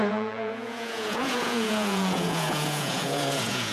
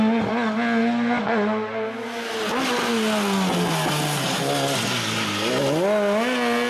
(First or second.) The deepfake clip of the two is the first